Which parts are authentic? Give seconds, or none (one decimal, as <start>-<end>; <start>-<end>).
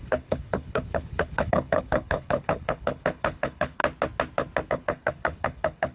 3.8-4.7